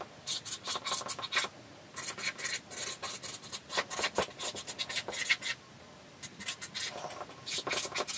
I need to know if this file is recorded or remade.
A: recorded